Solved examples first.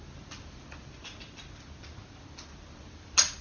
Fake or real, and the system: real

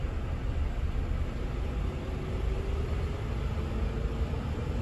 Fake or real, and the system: real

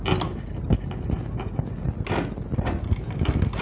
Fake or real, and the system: real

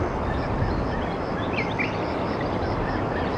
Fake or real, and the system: real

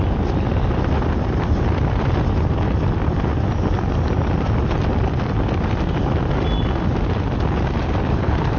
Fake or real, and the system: real